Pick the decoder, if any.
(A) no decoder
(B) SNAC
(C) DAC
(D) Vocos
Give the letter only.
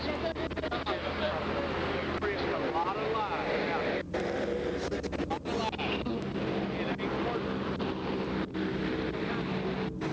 A